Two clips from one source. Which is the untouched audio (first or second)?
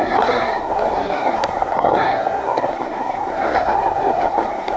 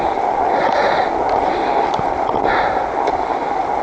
second